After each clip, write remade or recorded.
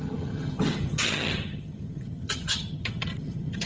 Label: remade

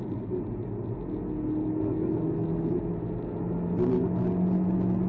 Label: recorded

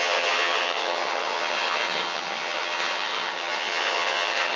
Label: remade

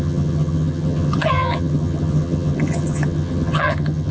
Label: remade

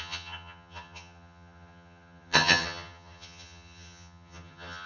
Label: remade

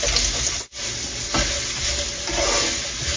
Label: recorded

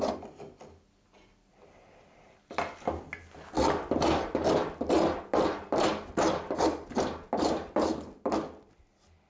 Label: recorded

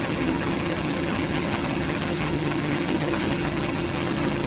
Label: remade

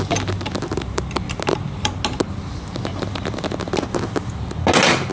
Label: recorded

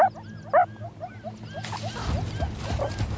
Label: recorded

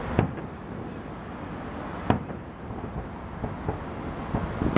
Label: recorded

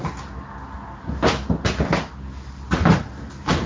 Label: recorded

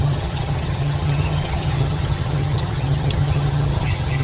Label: remade